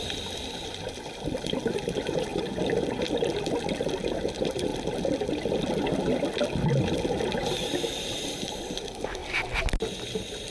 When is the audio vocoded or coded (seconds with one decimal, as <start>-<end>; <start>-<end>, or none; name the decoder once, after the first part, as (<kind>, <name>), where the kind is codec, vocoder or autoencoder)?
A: 0.0-4.7 (vocoder, BigVGAN v2); 6.7-9.2; 9.7-10.5